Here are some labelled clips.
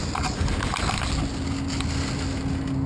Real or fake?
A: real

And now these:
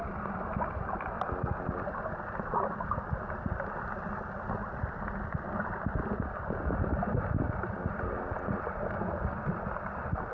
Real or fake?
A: real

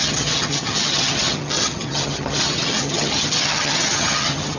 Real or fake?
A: fake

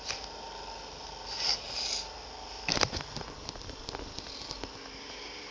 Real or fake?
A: real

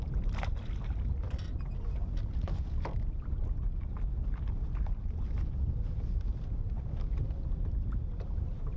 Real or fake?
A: real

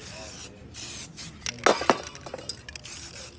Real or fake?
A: real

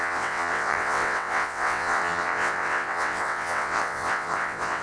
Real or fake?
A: fake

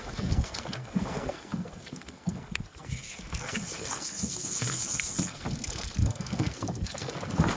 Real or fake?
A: fake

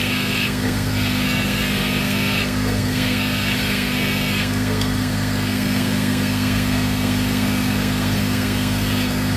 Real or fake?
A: fake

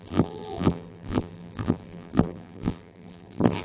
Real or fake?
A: fake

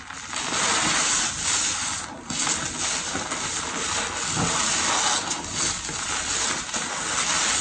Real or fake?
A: real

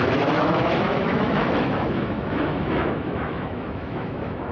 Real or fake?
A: fake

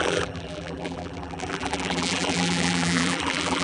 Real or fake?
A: fake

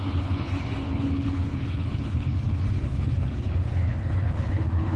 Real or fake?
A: fake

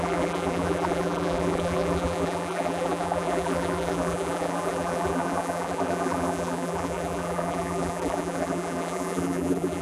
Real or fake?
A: fake